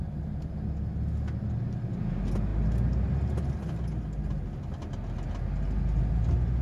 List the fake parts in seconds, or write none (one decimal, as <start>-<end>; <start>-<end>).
0.0-0.5